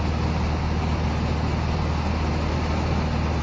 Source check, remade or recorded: recorded